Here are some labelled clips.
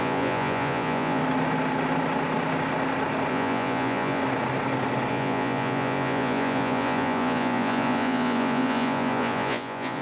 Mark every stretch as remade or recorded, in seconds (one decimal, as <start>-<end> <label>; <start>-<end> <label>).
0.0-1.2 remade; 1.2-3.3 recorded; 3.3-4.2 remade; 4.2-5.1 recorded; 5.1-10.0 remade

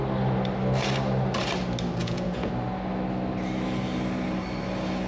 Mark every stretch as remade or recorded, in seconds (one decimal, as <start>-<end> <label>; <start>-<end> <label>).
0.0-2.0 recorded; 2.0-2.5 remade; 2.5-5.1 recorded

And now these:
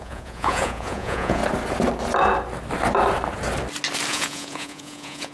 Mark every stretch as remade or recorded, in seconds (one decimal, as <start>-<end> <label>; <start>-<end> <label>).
0.0-1.4 remade; 1.4-4.1 recorded; 4.1-5.3 remade

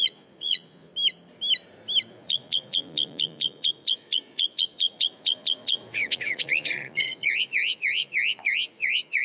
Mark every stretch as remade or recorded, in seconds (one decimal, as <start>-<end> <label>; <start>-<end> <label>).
0.0-0.9 remade; 0.9-2.1 recorded; 2.1-9.2 remade

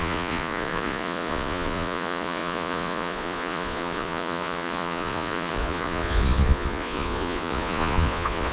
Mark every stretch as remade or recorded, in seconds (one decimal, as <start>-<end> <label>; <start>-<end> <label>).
0.0-8.5 remade